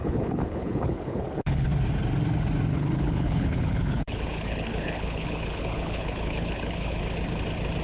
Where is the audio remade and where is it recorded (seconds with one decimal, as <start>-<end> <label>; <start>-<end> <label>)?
0.0-1.7 remade; 1.7-2.7 recorded; 2.7-7.0 remade; 7.0-7.8 recorded